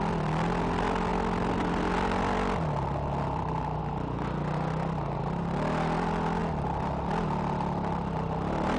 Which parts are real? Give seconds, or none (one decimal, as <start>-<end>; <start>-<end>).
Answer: 0.0-8.8